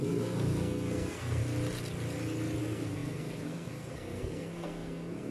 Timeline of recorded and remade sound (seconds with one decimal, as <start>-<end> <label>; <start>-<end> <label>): 0.0-1.4 remade; 1.4-2.6 recorded; 2.6-5.3 remade